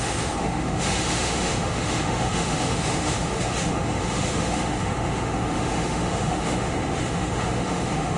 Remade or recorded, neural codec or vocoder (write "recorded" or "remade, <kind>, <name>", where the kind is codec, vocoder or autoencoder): remade, autoencoder, DAC-VAE